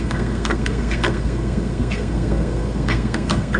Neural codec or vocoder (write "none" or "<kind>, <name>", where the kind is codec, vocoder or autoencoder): codec, SNAC